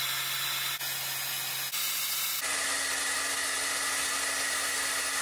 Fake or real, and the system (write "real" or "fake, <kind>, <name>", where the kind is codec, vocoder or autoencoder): real